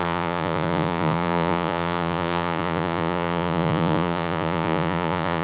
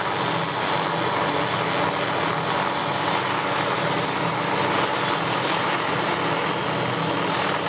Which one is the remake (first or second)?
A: first